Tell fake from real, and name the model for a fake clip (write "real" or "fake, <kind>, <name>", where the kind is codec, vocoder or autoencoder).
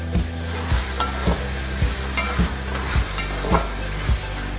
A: real